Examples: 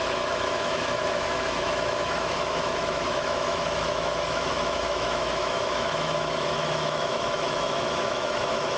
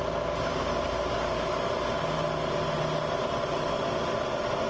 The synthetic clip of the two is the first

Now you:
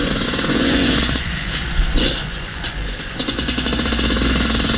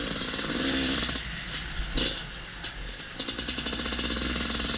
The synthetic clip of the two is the first